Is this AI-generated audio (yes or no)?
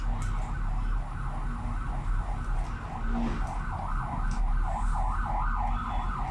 no